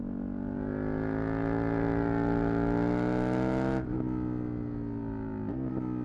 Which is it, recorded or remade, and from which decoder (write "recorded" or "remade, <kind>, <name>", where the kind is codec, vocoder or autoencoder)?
recorded